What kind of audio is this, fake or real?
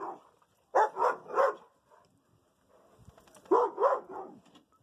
real